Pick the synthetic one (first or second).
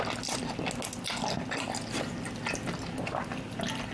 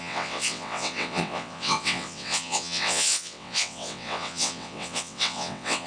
second